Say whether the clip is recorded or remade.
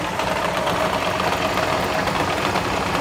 recorded